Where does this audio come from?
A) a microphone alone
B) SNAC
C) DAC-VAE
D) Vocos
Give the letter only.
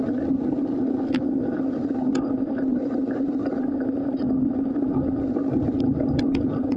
A